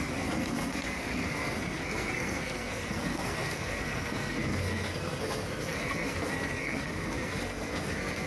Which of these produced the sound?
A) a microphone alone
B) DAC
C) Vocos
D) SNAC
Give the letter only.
D